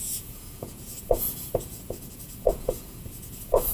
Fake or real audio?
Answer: fake